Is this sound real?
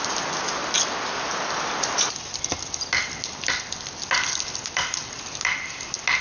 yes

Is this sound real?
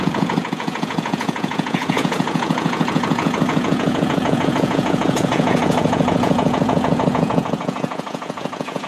no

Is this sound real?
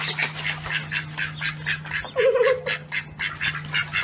yes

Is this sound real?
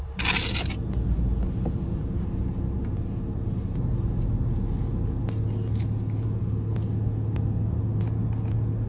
yes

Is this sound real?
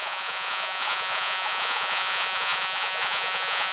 no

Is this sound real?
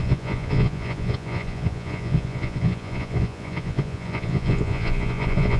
no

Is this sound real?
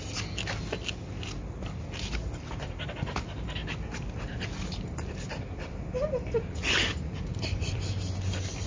yes